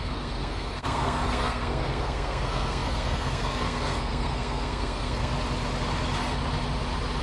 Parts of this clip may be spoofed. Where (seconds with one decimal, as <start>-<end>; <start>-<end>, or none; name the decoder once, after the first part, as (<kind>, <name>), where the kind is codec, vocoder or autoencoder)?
0.0-5.3 (codec, SNAC)